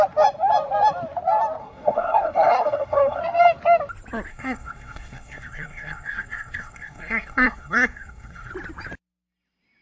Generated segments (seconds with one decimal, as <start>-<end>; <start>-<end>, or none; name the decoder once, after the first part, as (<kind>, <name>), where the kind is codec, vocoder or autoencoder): 1.6-3.2 (codec, SNAC); 4.3-8.5